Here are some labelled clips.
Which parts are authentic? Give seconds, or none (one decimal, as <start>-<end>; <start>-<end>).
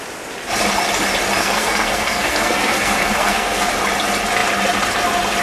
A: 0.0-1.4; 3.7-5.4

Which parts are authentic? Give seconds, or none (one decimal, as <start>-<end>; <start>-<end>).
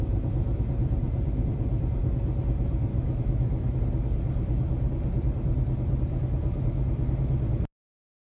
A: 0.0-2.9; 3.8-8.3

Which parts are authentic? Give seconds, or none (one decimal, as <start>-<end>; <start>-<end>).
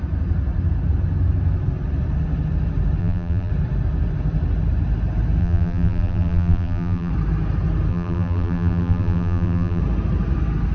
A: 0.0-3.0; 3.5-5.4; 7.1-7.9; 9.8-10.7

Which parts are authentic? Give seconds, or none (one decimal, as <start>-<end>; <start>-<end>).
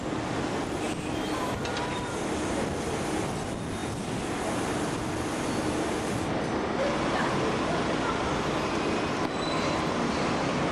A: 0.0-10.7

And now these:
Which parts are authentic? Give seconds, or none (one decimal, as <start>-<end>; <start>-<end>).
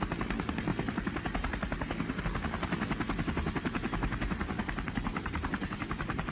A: 0.0-5.1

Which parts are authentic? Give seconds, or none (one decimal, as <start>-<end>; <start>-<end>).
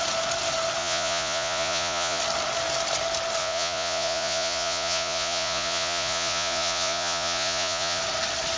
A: 0.0-0.8; 2.2-3.4; 8.0-8.6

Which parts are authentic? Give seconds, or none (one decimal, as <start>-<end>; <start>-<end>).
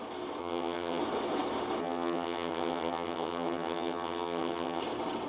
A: 0.0-0.4; 1.0-1.8; 4.8-5.3